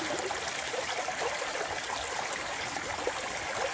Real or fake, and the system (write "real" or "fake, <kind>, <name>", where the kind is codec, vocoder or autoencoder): real